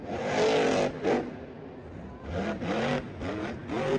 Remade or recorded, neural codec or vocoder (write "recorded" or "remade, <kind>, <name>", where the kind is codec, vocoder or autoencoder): recorded